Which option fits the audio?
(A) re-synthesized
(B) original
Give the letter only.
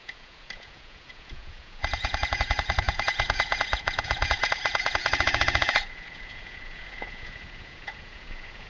A